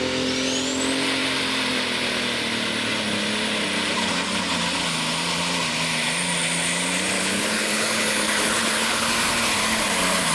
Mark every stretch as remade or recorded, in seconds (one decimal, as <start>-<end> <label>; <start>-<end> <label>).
0.0-7.2 recorded; 7.2-9.1 remade; 9.1-10.3 recorded